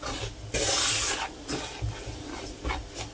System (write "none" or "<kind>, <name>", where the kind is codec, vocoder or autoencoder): none